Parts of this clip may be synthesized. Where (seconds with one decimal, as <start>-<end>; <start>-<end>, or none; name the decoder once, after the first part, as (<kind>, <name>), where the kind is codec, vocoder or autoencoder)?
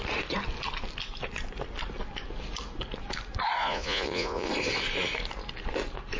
3.6-4.5 (vocoder, Vocos)